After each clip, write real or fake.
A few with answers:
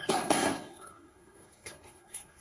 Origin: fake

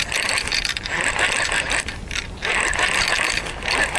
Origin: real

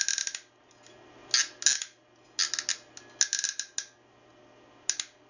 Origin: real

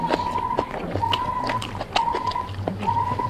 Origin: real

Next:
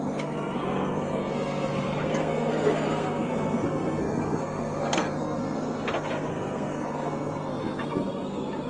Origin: fake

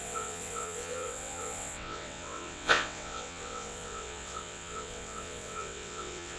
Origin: fake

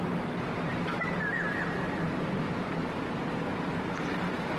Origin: real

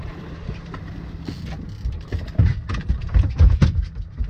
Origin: real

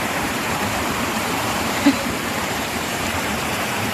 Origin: fake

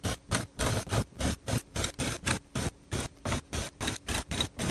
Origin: real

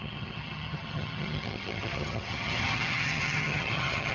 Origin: fake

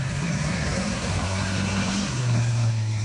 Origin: fake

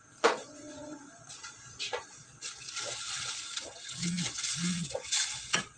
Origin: fake